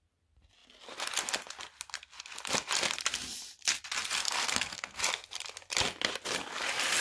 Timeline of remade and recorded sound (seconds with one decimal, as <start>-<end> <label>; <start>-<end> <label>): 0.0-4.2 recorded; 4.2-5.0 remade; 5.0-7.0 recorded